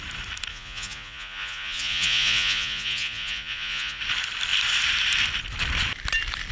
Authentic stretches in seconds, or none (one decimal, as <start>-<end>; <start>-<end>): 0.0-0.5; 4.0-6.5